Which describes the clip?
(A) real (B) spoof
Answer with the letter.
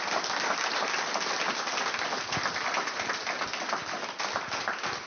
A